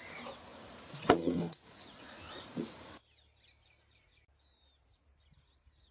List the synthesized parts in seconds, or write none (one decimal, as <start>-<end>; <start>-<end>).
0.5-3.0